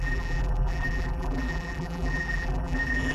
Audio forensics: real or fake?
fake